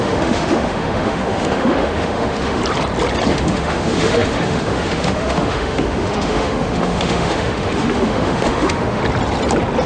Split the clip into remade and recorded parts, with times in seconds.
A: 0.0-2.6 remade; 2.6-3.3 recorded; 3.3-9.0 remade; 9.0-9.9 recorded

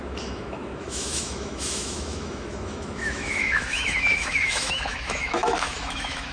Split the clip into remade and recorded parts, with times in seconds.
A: 0.0-6.3 remade